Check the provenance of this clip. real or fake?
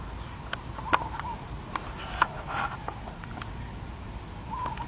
real